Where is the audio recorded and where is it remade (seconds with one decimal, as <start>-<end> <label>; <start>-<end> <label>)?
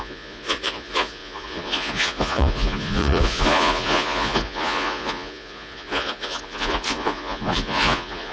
0.0-8.3 remade